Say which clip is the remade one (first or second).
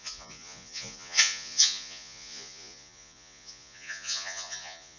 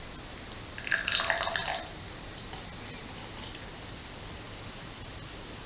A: first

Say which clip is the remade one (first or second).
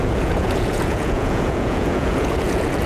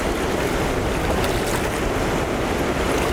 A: first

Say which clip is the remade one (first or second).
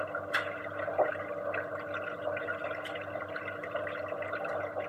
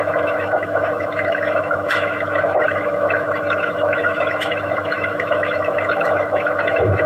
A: second